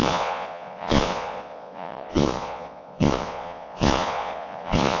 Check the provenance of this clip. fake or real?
fake